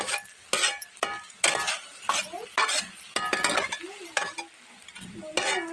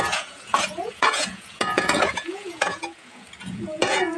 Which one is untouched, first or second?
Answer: first